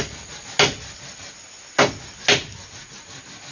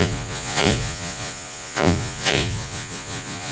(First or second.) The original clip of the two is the first